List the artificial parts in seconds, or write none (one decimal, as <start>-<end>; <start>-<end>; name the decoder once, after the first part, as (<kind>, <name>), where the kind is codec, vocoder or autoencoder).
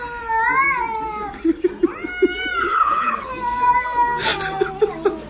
2.6-3.3 (codec, HILCodec)